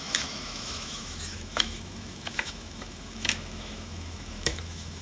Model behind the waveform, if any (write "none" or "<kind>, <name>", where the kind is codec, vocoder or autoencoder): autoencoder, DAC-VAE